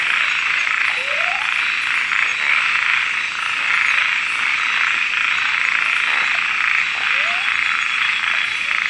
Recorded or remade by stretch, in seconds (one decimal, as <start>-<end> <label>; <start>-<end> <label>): 0.0-8.9 recorded